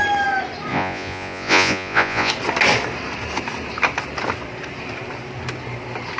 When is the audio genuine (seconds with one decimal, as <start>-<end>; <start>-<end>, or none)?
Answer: 0.0-0.7; 2.3-6.2